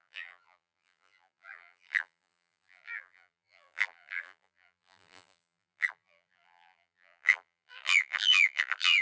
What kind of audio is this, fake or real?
fake